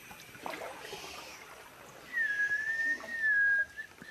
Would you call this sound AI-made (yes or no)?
no